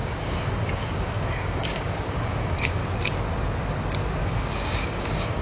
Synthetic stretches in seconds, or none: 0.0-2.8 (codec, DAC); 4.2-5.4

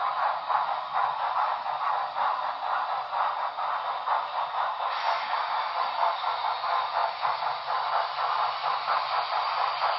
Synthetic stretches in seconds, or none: none